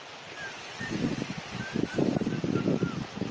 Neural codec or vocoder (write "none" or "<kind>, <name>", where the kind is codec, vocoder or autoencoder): none